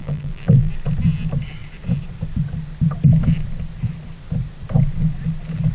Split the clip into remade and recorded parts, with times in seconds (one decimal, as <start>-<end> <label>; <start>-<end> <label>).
0.0-0.7 remade; 0.7-5.7 recorded